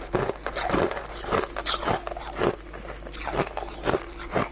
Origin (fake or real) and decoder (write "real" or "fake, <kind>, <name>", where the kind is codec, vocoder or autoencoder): real